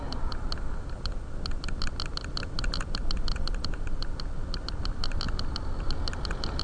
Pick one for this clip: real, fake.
real